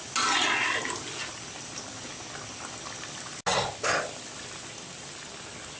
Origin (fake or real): real